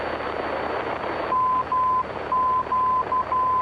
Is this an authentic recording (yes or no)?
yes